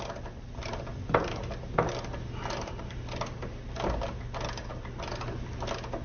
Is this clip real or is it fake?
real